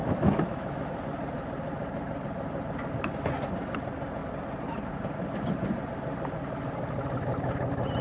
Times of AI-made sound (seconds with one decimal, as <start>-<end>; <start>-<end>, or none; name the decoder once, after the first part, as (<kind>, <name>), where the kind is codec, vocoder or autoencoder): 0.0-0.9 (autoencoder, DAC-VAE)

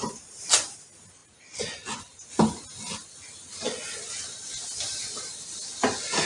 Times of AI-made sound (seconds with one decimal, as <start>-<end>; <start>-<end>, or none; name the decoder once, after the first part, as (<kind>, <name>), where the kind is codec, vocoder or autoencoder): none

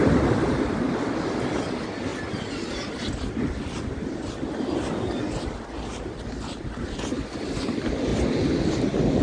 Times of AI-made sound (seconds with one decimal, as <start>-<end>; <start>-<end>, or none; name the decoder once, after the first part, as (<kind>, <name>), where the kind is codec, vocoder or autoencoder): none

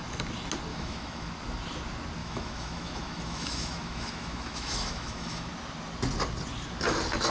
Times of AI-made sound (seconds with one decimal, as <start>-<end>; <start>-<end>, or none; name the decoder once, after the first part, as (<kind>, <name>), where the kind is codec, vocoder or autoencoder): 0.7-1.3 (autoencoder, DAC-VAE); 2.2-5.5

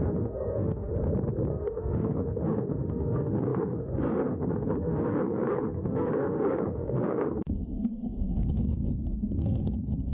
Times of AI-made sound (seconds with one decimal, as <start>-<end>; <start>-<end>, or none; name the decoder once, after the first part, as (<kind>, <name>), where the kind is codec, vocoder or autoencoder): 0.0-0.9 (autoencoder, DAC-VAE); 1.5-10.1

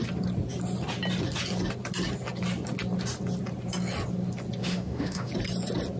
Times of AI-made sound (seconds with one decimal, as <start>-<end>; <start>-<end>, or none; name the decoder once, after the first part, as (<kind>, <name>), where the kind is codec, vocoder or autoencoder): 4.6-5.3 (autoencoder, DAC-VAE)